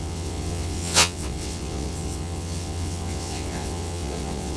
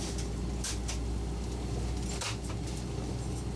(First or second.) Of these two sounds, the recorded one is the second